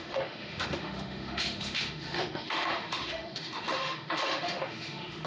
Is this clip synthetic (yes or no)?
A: yes